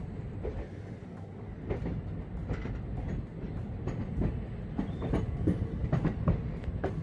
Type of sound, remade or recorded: recorded